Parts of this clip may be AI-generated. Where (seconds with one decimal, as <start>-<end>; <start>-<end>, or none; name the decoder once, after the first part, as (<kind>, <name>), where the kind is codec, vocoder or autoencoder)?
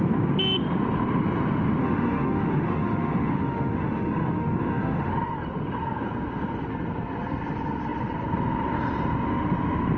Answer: 1.8-5.1 (autoencoder, DAC-VAE)